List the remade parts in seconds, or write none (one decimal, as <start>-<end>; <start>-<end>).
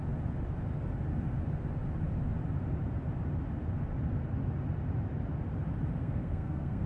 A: 6.0-6.9